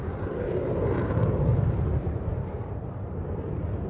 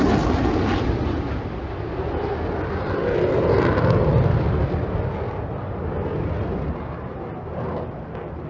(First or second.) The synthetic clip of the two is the first